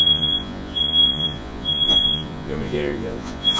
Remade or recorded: remade